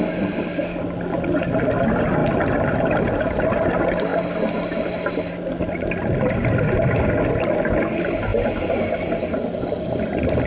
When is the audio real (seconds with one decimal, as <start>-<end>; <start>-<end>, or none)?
0.0-2.2; 3.4-10.5